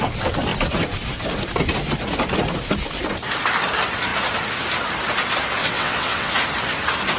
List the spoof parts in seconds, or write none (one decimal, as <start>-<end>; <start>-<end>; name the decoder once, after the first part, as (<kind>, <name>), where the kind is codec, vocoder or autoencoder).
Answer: 5.6-6.3 (vocoder, WaveNeXt)